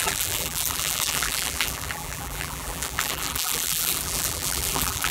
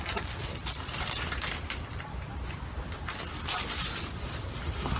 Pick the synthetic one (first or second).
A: first